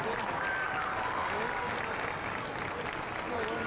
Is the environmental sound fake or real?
real